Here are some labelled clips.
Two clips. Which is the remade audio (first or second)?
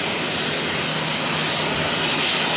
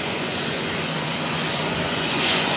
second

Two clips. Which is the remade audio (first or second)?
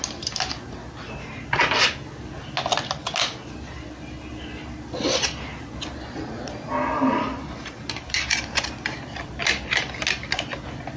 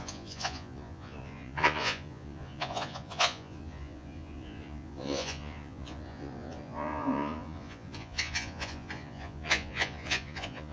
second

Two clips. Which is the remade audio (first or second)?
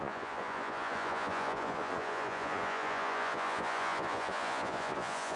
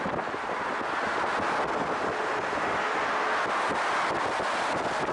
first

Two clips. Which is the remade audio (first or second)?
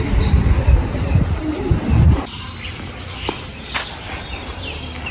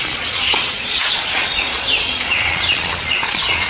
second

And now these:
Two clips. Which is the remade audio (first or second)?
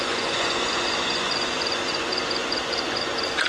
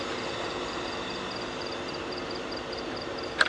first